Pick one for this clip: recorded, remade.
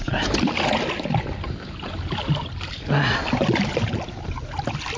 recorded